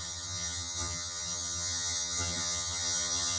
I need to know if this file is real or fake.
fake